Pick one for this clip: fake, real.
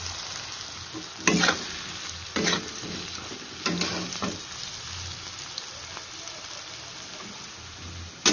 real